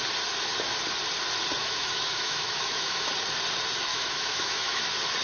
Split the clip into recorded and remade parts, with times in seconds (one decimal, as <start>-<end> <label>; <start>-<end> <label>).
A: 0.0-1.6 recorded; 1.6-3.1 remade; 3.1-3.9 recorded; 3.9-4.8 remade; 4.8-5.2 recorded

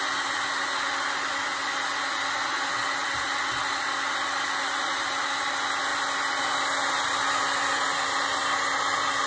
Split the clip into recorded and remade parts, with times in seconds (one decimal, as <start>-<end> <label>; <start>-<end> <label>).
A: 0.0-9.3 recorded

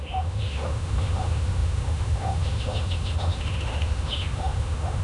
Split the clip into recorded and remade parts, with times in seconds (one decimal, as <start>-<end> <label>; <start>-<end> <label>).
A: 0.0-5.0 remade

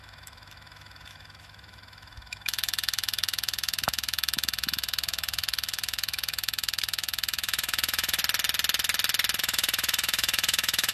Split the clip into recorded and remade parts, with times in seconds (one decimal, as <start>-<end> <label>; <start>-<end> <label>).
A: 0.0-8.2 remade; 8.2-9.4 recorded; 9.4-10.9 remade

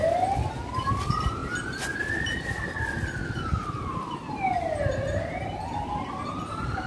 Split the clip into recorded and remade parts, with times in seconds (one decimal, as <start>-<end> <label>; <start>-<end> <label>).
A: 0.0-6.9 recorded

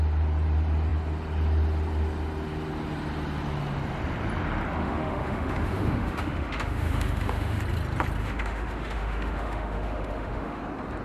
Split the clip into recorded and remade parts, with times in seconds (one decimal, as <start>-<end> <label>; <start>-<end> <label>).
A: 0.0-4.8 recorded; 4.8-7.6 remade; 7.6-8.2 recorded; 8.2-10.6 remade; 10.6-11.0 recorded